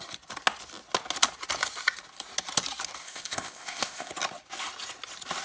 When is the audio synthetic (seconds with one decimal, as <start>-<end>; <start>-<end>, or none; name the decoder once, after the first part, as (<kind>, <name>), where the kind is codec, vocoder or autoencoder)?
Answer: 3.0-4.1 (codec, ZipCodec)